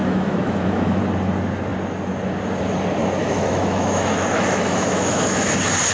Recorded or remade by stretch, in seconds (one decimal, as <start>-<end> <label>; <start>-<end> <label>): 0.0-1.0 remade; 1.0-3.2 recorded; 3.2-5.5 remade; 5.5-5.9 recorded